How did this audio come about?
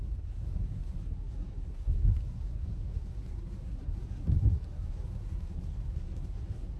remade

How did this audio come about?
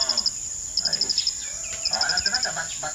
recorded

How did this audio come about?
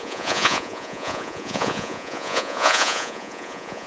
remade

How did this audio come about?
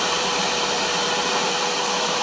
remade